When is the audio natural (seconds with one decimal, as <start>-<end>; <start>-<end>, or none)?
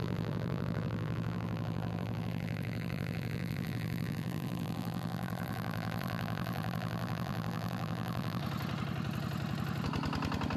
8.4-10.6